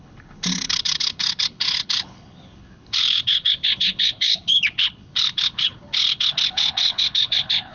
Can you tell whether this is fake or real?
fake